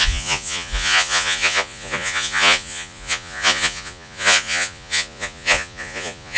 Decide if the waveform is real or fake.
fake